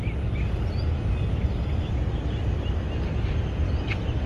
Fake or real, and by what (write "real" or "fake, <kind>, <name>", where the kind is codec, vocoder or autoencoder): real